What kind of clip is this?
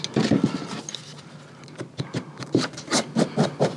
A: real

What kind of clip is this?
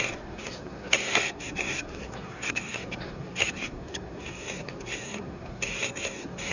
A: fake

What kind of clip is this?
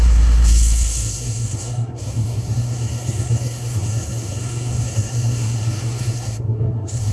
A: fake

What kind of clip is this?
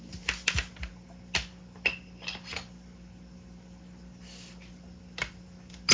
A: real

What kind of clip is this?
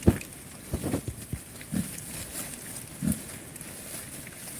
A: real